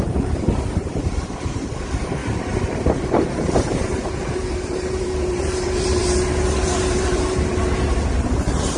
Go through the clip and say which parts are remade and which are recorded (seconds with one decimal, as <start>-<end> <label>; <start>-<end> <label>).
0.0-2.2 remade; 2.2-3.3 recorded; 3.3-8.8 remade